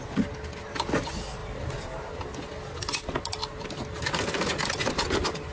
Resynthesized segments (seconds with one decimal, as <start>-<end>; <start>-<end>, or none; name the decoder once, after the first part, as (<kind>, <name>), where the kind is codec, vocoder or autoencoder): none